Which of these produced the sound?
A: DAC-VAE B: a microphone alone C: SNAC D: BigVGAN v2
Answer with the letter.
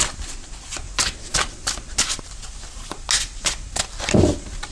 B